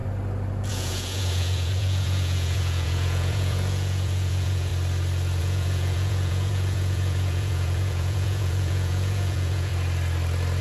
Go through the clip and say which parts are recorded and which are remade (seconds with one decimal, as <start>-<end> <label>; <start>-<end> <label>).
0.0-0.7 recorded; 0.7-4.7 remade; 4.7-5.4 recorded; 5.4-9.7 remade; 9.7-10.6 recorded